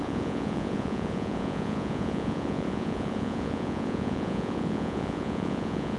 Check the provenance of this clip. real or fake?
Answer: fake